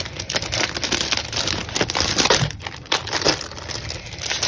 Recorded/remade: recorded